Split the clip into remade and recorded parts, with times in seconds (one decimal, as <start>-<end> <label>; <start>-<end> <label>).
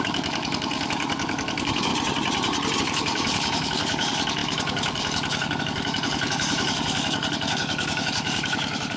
0.0-1.9 remade; 1.9-2.8 recorded; 2.8-9.0 remade